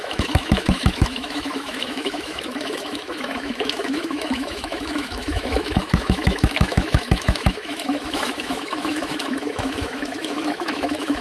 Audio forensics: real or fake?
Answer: fake